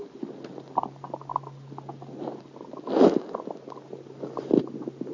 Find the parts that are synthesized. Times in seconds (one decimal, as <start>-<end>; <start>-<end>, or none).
none